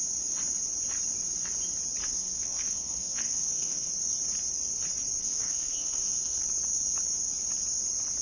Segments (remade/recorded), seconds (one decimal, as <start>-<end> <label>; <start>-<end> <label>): 0.0-2.0 recorded; 2.0-3.9 remade; 3.9-5.2 recorded; 5.2-6.4 remade; 6.4-8.2 recorded